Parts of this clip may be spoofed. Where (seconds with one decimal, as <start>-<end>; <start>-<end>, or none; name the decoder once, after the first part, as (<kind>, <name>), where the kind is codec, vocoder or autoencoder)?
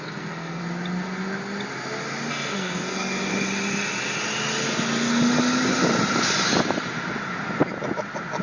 0.0-0.6 (codec, SNAC); 2.3-3.3